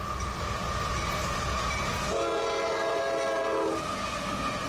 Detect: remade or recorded recorded